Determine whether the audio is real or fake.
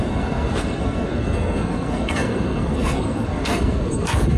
fake